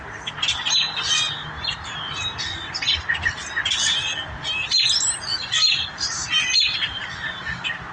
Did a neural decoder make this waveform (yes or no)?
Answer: no